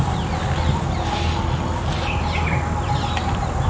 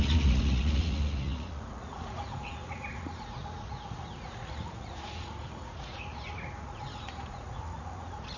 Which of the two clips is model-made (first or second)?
second